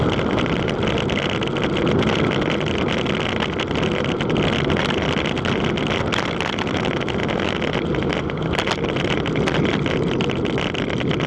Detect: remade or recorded recorded